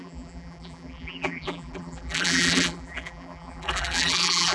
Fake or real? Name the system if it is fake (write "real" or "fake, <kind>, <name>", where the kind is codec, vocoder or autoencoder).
fake, vocoder, BigVGAN v2